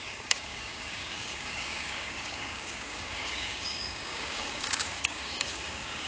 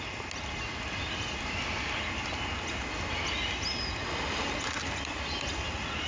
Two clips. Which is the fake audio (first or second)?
first